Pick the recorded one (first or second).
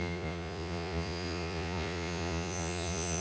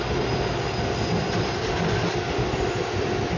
second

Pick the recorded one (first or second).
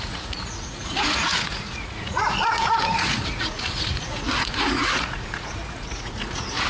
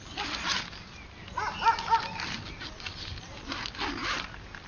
second